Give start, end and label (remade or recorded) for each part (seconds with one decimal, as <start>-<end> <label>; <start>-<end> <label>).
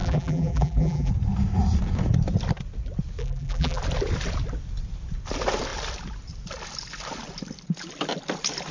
0.0-1.1 remade; 1.1-3.2 recorded; 3.2-3.8 remade; 3.8-8.7 recorded